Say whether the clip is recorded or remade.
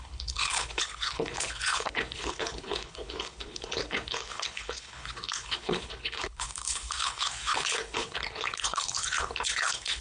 remade